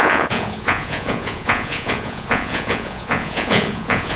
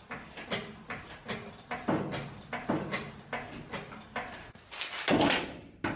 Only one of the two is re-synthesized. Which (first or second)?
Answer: first